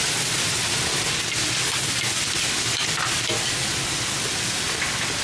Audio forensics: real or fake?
real